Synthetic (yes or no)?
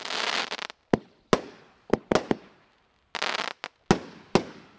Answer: no